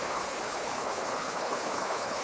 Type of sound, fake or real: fake